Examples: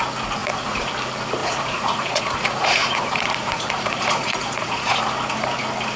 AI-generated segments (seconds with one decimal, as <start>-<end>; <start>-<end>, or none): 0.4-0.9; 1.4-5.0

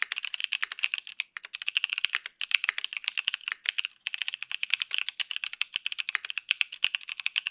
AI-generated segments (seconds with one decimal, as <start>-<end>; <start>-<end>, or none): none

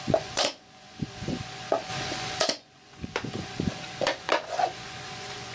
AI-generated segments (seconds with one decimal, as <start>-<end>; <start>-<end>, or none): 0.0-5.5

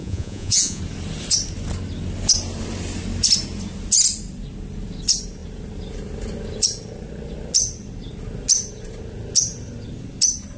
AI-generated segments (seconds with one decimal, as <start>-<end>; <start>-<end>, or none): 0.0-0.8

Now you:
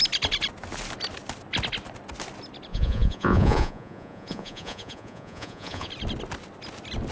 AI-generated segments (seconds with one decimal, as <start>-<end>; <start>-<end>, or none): 2.7-5.9

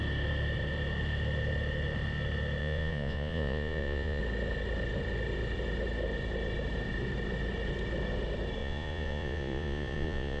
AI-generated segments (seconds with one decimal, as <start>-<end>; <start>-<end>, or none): 2.6-4.2; 8.6-10.4

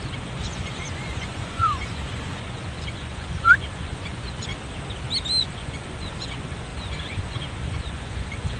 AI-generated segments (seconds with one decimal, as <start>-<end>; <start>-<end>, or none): 0.0-4.5; 5.4-8.6